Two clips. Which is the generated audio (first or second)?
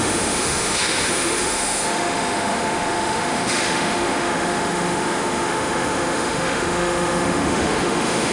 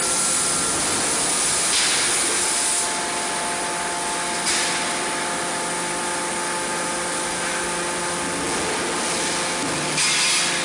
first